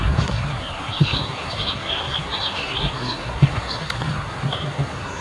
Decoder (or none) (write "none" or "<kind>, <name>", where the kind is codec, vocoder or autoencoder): codec, SNAC